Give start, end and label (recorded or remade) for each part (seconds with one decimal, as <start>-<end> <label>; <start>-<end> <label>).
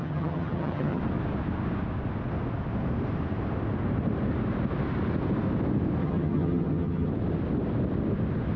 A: 0.0-1.0 remade; 1.0-6.0 recorded; 6.0-7.1 remade; 7.1-8.6 recorded